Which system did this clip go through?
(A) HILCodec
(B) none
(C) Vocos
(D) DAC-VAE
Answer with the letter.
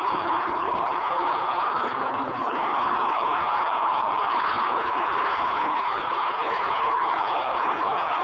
A